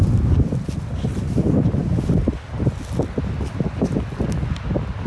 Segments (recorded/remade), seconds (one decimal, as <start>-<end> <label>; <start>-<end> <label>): 0.0-5.1 recorded